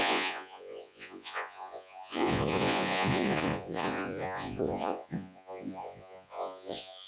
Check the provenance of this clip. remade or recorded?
remade